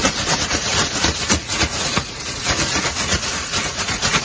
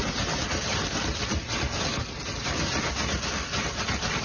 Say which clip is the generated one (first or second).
first